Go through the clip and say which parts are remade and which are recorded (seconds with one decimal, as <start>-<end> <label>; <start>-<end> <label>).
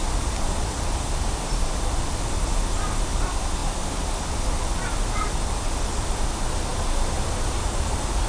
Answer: 0.0-8.3 recorded